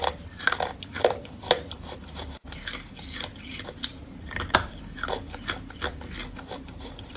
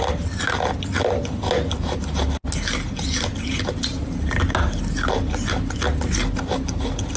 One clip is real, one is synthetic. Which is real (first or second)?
second